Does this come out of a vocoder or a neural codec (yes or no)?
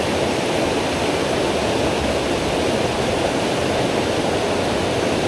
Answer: no